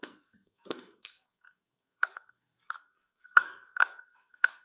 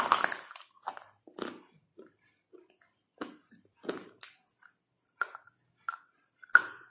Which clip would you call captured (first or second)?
second